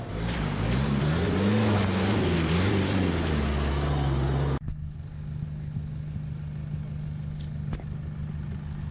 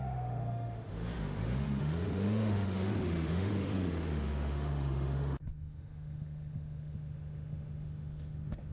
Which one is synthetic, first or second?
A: second